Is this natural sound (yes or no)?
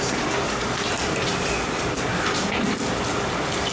yes